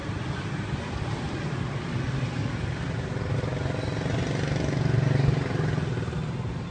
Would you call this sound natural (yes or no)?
yes